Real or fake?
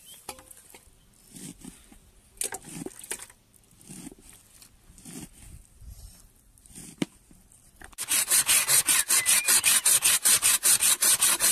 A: real